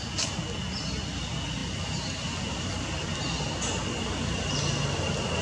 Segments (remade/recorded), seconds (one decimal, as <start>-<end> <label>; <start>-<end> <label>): 0.0-5.4 recorded